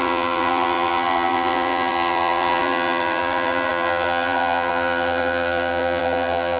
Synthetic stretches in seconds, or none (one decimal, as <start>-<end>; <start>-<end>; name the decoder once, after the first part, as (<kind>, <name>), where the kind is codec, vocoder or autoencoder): 0.0-6.6 (vocoder, BigVGAN v2)